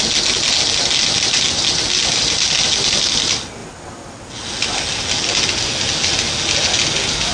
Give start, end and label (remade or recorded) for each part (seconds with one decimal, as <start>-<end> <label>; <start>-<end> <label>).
0.0-7.3 recorded